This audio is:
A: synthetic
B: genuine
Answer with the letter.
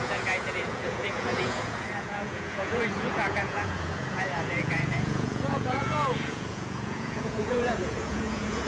A